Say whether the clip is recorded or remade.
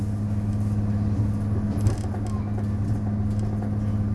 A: recorded